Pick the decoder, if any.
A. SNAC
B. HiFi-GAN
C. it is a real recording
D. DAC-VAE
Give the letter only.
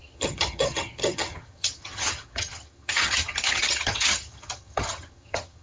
B